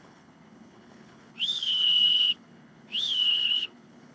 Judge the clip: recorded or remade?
remade